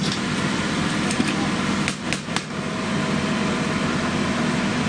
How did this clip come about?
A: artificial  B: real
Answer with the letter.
B